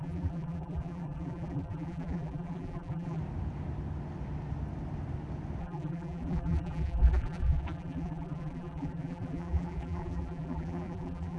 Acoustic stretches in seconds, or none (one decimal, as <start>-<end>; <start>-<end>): 3.2-5.6